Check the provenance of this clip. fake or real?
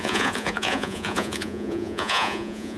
fake